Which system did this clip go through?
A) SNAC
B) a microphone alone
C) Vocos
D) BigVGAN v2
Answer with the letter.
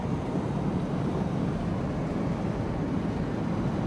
B